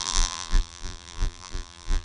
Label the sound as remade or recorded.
remade